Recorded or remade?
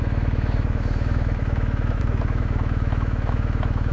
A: remade